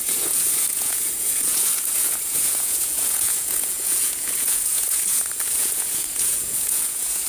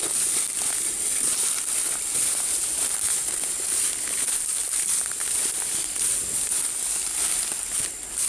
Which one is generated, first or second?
first